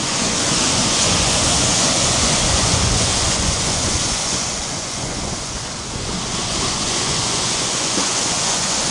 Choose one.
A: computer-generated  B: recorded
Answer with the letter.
A